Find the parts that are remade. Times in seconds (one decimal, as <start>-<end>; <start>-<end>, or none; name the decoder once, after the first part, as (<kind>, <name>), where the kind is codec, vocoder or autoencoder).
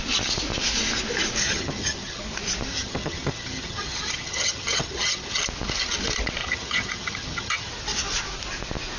1.4-2.2 (vocoder, HiFi-GAN); 2.7-5.4; 6.4-7.7